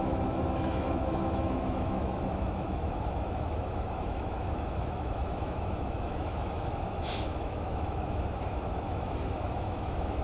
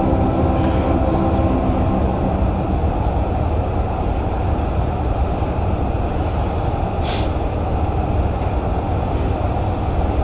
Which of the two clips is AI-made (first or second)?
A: first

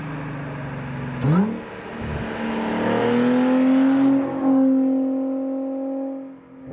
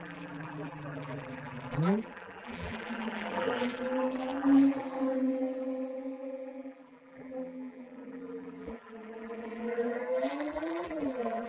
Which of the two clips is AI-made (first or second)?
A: second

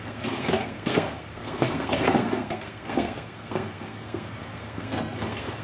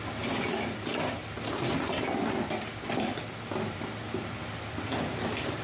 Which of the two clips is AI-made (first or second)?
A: first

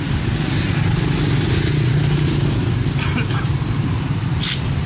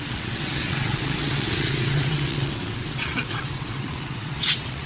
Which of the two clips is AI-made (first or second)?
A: second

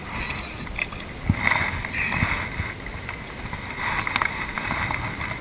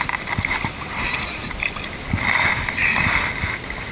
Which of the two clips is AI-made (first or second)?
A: second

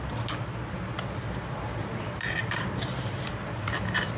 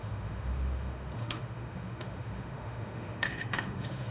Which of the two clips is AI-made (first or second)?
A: second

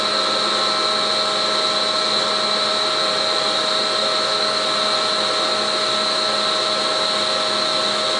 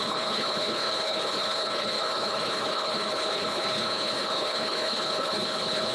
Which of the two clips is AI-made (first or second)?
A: second